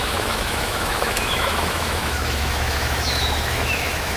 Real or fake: fake